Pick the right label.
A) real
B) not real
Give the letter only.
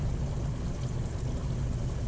B